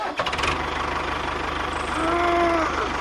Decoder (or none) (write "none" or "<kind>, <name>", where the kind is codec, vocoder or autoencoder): none